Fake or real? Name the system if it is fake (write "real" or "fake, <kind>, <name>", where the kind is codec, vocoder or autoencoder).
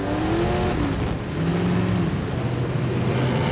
real